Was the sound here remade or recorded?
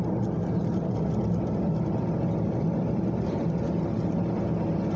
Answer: recorded